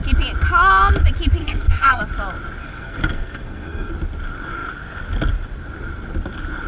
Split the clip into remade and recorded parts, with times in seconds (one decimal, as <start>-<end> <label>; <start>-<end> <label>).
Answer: 0.0-1.4 recorded; 1.4-2.0 remade; 2.0-2.6 recorded; 2.6-3.9 remade; 3.9-6.7 recorded